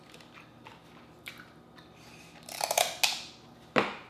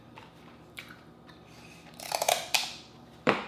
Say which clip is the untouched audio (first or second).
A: first